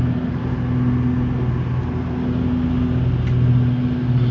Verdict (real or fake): real